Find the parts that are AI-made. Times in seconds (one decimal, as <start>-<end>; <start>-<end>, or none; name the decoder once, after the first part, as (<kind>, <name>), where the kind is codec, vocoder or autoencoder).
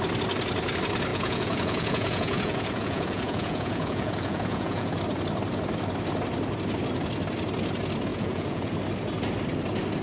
1.1-5.0 (vocoder, Vocos); 8.1-8.7